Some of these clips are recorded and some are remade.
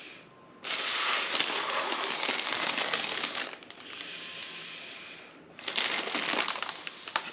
recorded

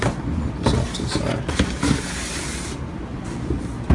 recorded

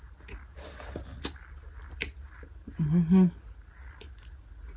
recorded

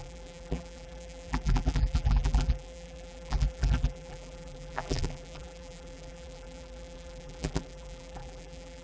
remade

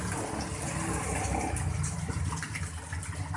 recorded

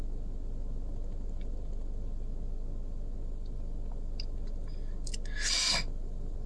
recorded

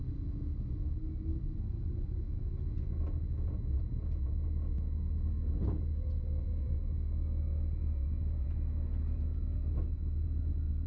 recorded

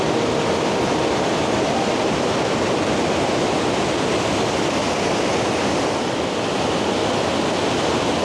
recorded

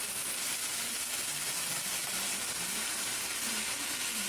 recorded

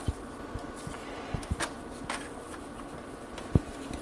recorded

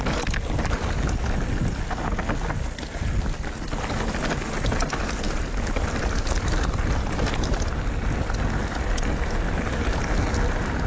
recorded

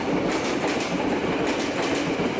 recorded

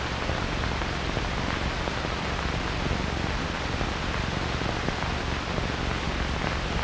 recorded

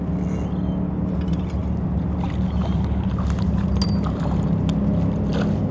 recorded